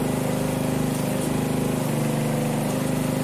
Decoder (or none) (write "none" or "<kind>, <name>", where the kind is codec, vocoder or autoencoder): none